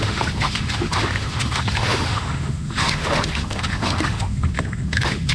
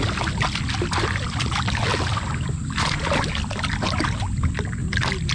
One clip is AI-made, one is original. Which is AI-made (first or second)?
first